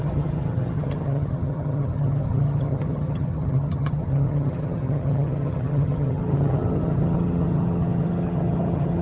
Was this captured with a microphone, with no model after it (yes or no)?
no